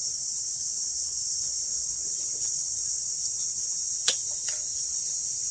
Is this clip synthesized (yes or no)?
yes